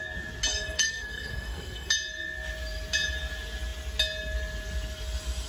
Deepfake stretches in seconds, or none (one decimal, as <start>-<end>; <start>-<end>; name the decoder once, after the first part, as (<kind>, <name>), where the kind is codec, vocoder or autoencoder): 0.5-1.9 (codec, SNAC)